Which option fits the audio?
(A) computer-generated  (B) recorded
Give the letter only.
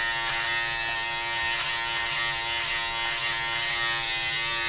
B